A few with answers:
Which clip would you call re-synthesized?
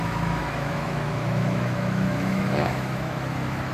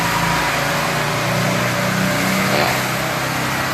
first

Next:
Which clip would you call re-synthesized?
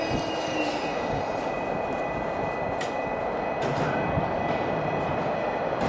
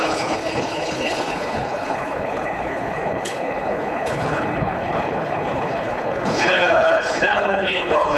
second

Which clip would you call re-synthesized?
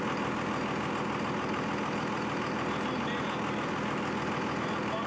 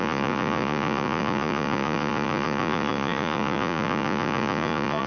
second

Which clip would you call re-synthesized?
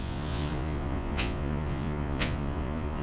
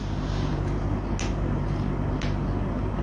first